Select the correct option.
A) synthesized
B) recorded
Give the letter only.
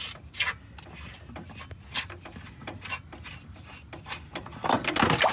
B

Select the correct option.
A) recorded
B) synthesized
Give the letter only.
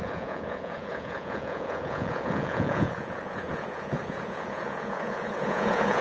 B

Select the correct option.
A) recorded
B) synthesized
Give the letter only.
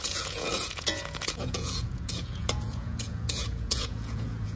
B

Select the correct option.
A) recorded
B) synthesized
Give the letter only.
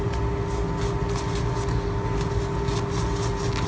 A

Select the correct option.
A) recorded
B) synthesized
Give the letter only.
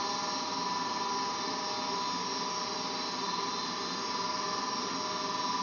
A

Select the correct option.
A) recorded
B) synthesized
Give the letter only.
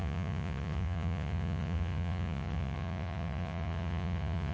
B